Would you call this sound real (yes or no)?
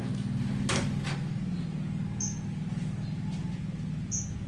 yes